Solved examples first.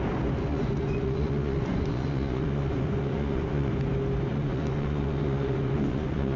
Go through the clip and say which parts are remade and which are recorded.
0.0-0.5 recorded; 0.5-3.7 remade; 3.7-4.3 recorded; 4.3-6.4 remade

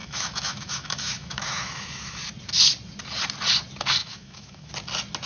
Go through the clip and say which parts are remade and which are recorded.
0.0-2.2 remade; 2.2-4.0 recorded; 4.0-4.7 remade; 4.7-5.3 recorded

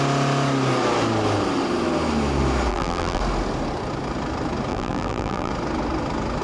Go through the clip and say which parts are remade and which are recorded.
0.0-2.7 recorded; 2.7-3.2 remade; 3.2-4.7 recorded; 4.7-5.5 remade; 5.5-6.4 recorded

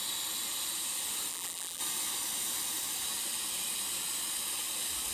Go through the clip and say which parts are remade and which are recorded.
0.0-1.3 recorded; 1.3-1.8 remade; 1.8-5.1 recorded

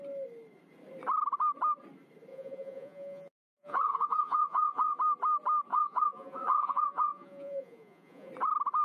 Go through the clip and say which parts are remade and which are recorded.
0.0-2.3 recorded; 2.3-5.0 remade; 5.0-5.7 recorded; 5.7-8.3 remade; 8.3-8.8 recorded

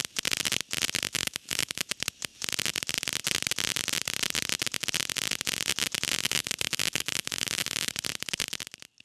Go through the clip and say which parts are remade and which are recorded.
0.0-1.1 recorded; 1.1-1.9 remade; 1.9-6.2 recorded; 6.2-7.9 remade; 7.9-9.0 recorded